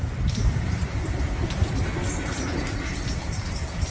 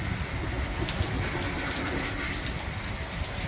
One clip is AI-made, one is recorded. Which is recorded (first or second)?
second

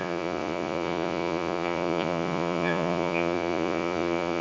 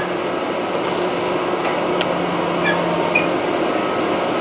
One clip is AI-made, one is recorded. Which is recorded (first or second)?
second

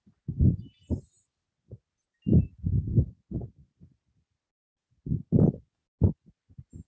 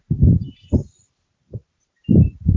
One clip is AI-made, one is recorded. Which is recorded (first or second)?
first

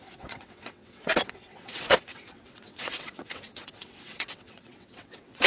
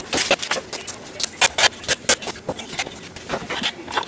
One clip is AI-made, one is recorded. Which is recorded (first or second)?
second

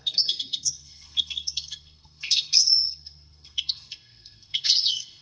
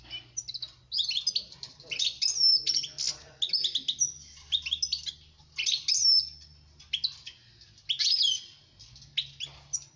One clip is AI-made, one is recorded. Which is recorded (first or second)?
second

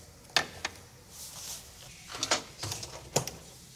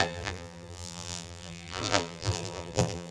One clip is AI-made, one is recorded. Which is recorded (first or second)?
first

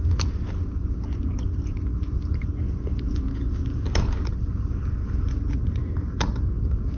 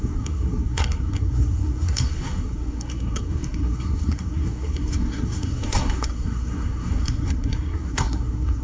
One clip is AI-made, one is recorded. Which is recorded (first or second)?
first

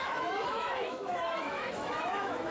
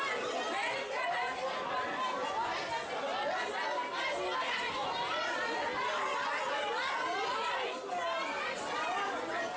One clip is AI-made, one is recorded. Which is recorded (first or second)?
second